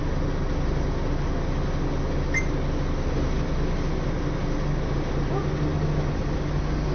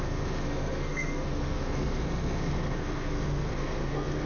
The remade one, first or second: second